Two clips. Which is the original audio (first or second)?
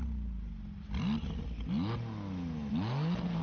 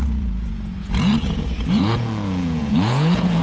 first